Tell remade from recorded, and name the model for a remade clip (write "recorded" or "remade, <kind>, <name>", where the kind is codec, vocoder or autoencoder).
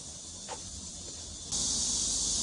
recorded